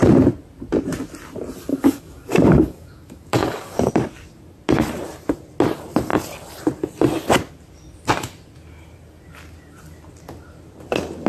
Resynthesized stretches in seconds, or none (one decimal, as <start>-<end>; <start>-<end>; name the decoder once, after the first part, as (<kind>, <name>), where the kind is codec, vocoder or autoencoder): 1.7-3.9 (codec, DAC)